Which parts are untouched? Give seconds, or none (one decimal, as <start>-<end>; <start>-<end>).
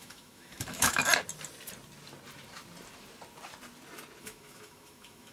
1.0-4.2